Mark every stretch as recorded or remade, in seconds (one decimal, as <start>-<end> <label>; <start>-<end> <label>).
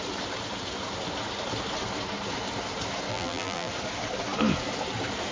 0.0-3.1 recorded; 3.1-3.7 remade; 3.7-5.3 recorded